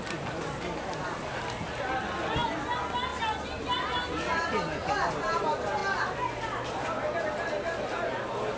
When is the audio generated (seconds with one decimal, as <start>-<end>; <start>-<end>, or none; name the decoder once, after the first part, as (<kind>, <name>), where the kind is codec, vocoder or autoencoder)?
none